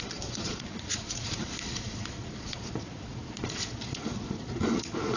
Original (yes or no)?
no